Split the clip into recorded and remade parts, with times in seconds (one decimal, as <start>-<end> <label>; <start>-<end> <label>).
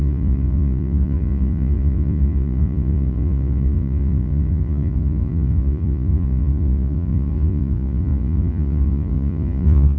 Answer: 0.0-10.0 remade